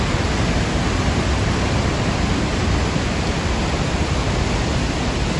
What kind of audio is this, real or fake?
real